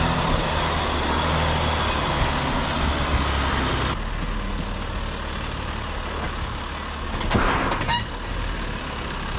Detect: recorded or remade recorded